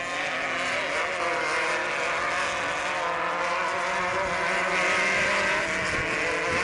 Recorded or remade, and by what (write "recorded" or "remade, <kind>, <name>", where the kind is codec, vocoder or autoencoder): recorded